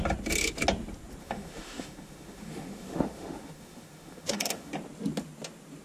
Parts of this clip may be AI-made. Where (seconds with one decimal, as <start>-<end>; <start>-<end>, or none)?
1.2-4.7